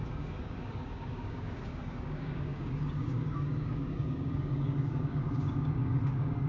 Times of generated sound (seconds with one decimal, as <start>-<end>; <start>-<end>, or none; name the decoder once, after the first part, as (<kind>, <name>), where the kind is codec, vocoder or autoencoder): 0.0-6.5 (codec, DAC)